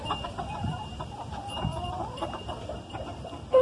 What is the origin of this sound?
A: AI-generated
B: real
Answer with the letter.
A